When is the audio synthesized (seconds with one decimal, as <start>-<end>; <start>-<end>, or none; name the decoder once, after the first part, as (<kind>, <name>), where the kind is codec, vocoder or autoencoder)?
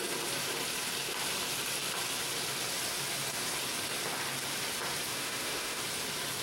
5.1-5.8 (autoencoder, DAC-VAE)